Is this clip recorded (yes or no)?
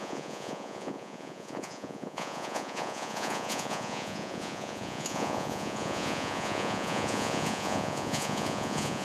no